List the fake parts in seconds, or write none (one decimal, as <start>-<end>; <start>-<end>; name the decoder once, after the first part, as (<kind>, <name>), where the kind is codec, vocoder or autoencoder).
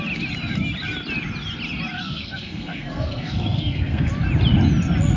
2.0-4.1 (codec, SNAC)